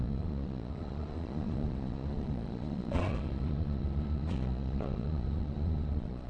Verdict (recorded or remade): remade